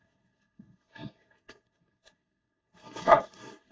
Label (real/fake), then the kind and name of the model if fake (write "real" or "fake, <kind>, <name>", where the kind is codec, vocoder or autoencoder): fake, codec, SNAC